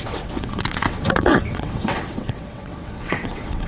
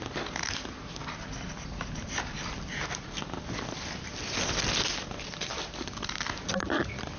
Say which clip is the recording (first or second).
second